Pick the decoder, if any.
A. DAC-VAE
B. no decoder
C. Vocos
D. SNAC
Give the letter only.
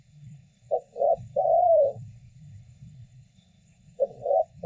D